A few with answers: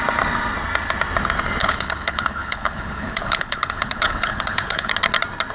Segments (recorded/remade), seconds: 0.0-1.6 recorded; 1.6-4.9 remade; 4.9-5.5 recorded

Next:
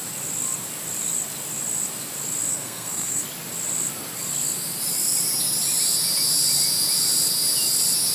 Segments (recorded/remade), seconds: 0.0-2.5 recorded; 2.5-3.2 remade; 3.2-8.1 recorded

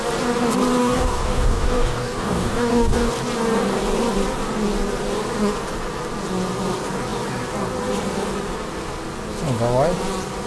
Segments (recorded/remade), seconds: 0.0-0.8 recorded; 0.8-3.1 remade; 3.1-10.5 recorded